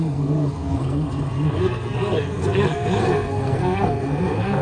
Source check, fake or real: fake